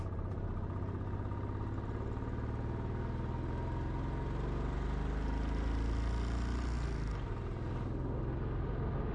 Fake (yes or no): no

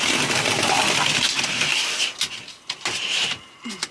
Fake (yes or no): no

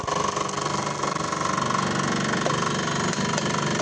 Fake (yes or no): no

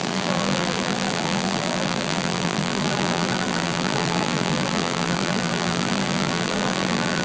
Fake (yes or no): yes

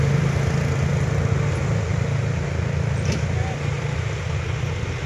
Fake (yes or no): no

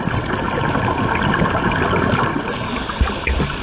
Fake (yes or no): no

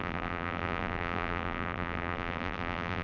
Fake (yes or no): yes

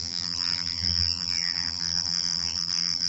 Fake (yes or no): yes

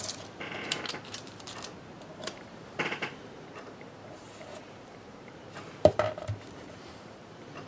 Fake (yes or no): yes